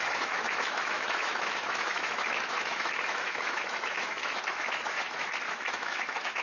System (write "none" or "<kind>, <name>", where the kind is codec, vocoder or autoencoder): autoencoder, DAC-VAE